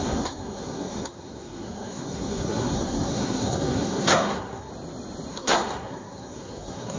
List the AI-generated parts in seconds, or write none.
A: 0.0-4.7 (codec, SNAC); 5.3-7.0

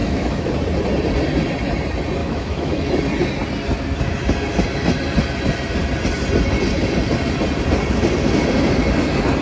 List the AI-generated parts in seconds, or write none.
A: 0.0-0.5 (autoencoder, DAC-VAE); 2.2-3.0